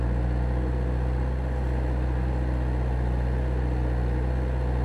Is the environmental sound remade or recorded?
recorded